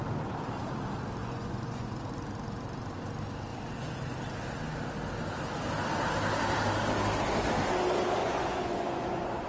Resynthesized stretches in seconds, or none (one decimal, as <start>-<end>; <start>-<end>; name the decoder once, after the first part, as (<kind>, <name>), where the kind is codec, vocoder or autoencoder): 1.2-1.9 (vocoder, Vocos); 8.2-9.5